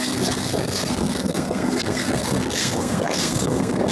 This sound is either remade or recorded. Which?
remade